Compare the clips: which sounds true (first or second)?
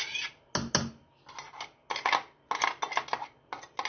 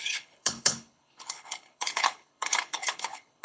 first